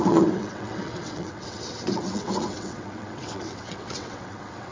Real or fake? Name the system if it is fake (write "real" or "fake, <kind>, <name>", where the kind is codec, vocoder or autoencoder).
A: fake, vocoder, WaveNeXt